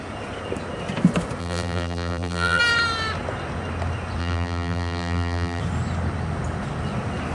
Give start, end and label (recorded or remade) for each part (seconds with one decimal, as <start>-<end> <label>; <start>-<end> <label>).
0.0-1.4 recorded; 1.4-2.6 remade; 2.6-4.2 recorded; 4.2-5.6 remade; 5.6-7.3 recorded